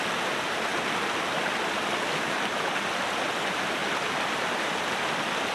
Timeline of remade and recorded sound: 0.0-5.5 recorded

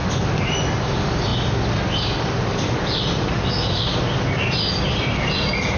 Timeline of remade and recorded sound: 0.0-5.8 recorded

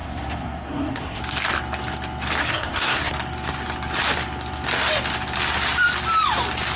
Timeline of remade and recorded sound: 0.0-1.2 remade; 1.2-2.4 recorded; 2.4-3.1 remade; 3.1-6.8 recorded

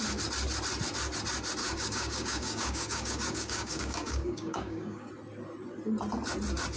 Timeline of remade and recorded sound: 0.0-1.6 recorded; 1.6-5.1 remade; 5.1-6.8 recorded

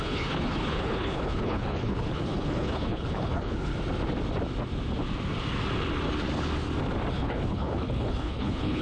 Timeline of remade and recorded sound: 0.0-3.7 remade; 3.7-7.1 recorded; 7.1-8.8 remade

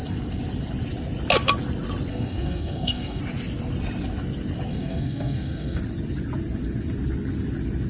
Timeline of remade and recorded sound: 0.0-2.1 recorded; 2.1-3.2 remade; 3.2-4.7 recorded; 4.7-5.8 remade; 5.8-7.9 recorded

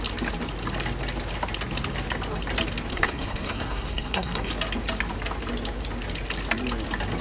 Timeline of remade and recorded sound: 0.0-2.9 recorded; 2.9-4.5 remade; 4.5-7.2 recorded